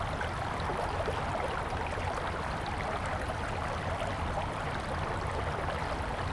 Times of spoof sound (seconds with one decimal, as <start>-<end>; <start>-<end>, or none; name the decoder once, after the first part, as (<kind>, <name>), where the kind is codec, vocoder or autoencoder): none